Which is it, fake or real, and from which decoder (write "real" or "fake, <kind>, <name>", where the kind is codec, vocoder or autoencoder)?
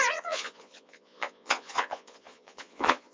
fake, vocoder, Vocos